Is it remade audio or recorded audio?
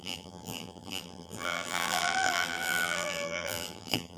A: remade